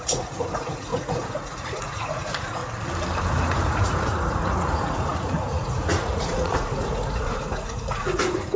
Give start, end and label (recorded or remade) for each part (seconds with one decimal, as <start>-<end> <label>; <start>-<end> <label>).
0.0-2.6 remade; 2.6-3.3 recorded; 3.3-8.6 remade